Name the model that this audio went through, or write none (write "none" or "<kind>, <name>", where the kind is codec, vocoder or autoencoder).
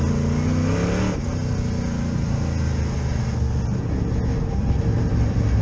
none